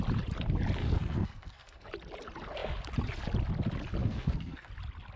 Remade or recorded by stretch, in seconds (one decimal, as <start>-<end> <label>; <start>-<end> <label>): 0.0-0.8 recorded; 0.8-1.9 remade; 1.9-4.0 recorded; 4.0-4.7 remade; 4.7-5.2 recorded